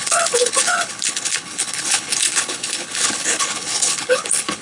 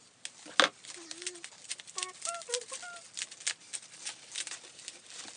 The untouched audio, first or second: second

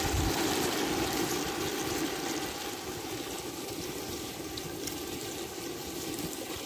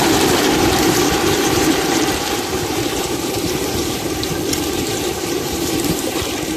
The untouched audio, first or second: first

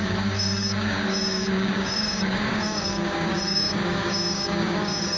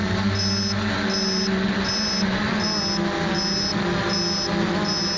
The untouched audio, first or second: second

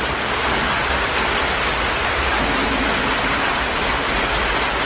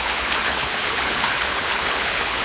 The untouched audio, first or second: first